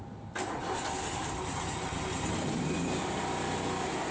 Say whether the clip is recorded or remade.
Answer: recorded